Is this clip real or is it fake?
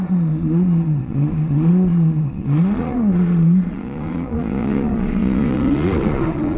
fake